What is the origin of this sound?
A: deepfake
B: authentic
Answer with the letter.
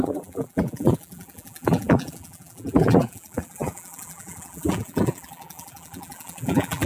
A